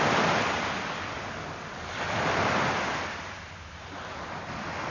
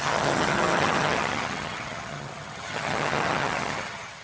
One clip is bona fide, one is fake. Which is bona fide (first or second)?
first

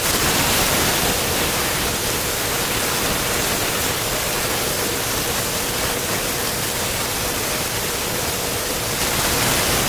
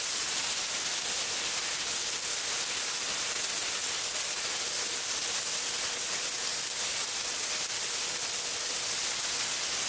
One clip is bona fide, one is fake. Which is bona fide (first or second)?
second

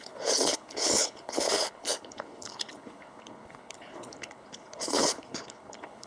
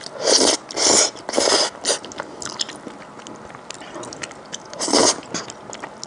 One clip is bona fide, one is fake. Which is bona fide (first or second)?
second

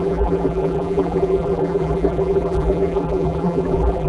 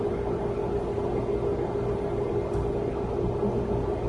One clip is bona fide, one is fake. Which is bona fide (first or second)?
second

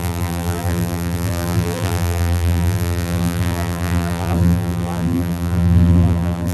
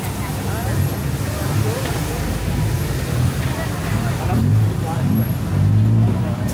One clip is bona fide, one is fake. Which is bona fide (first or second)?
second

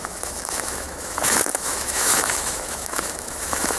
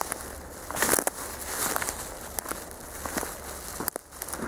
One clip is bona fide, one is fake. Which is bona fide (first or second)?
second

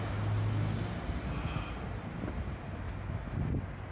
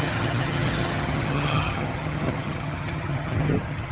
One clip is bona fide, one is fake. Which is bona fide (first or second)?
first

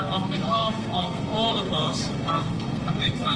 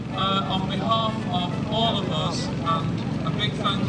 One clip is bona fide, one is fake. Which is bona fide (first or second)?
second